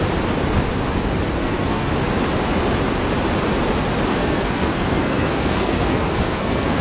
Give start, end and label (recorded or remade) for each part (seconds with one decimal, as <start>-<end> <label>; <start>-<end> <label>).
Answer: 0.0-1.4 recorded; 1.4-1.9 remade; 1.9-4.1 recorded; 4.1-6.8 remade